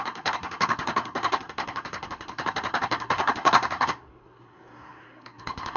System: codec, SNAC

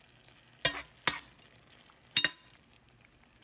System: none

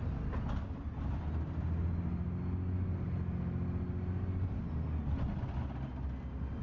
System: none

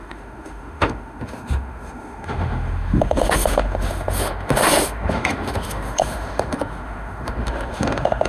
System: autoencoder, DAC-VAE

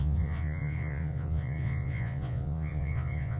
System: vocoder, Vocos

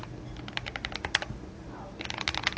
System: none